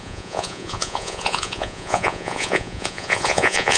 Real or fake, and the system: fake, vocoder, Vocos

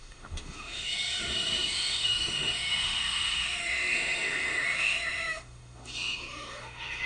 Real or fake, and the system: fake, autoencoder, DAC-VAE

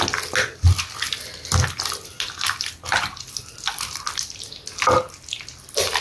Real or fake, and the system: real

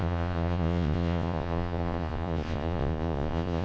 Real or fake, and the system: fake, vocoder, Vocos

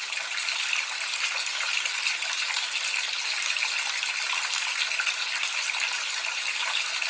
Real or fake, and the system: real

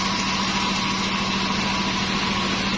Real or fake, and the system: real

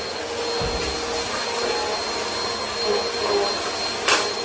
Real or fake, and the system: real